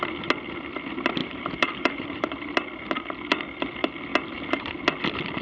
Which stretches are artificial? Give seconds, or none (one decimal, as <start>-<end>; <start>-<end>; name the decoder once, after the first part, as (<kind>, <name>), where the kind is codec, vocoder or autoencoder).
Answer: 1.2-2.3 (vocoder, BigVGAN v2)